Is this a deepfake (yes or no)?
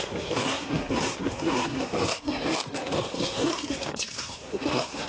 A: yes